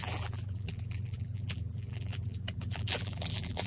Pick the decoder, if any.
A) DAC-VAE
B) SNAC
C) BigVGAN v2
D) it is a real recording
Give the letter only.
C